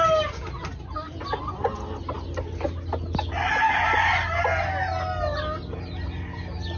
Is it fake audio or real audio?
real